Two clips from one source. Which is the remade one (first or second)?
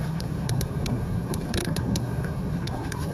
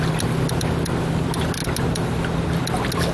first